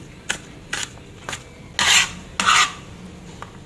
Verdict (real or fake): real